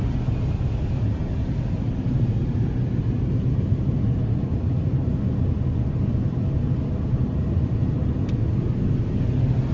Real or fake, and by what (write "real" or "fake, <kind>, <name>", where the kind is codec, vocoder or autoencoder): real